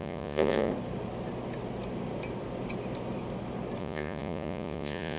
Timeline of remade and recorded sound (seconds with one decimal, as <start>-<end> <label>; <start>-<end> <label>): 0.0-0.7 remade; 0.7-3.8 recorded; 3.8-5.2 remade